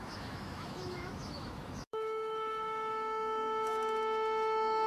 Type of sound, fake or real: fake